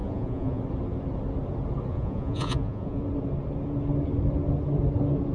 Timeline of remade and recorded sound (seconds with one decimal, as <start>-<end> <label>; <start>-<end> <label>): 0.0-0.6 remade; 0.6-1.9 recorded; 1.9-3.0 remade; 3.0-5.3 recorded